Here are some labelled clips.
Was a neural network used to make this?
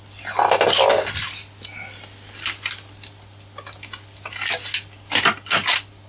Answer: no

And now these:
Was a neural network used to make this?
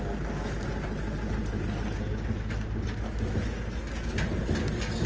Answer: no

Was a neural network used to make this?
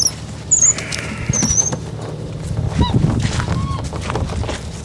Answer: no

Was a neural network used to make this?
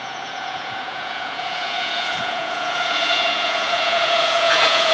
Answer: yes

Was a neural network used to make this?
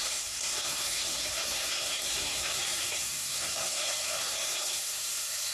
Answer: yes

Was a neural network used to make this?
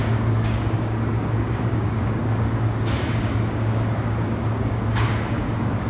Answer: yes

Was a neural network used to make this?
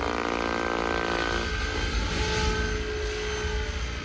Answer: no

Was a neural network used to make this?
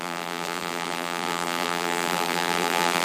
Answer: yes